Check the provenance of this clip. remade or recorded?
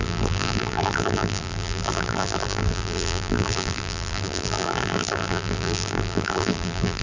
remade